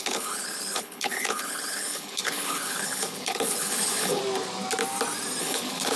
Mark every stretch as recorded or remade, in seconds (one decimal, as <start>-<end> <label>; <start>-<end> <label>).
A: 0.0-4.2 remade; 4.2-5.4 recorded; 5.4-6.0 remade